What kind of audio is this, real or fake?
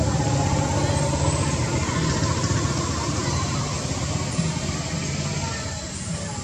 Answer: real